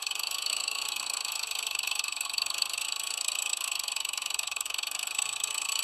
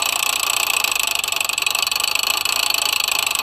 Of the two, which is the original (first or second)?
second